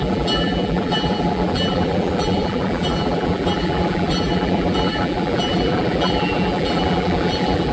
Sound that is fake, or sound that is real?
fake